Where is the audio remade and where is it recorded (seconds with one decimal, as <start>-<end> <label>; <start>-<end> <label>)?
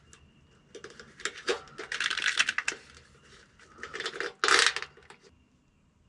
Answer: 0.0-6.1 recorded